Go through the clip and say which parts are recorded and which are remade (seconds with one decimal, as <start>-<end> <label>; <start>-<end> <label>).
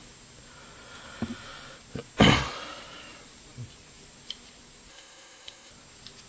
0.0-4.9 recorded; 4.9-5.7 remade; 5.7-6.3 recorded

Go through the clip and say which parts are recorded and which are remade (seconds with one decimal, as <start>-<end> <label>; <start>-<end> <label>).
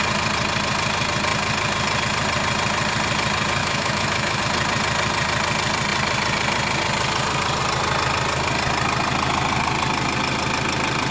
0.0-3.6 recorded; 3.6-4.4 remade; 4.4-11.1 recorded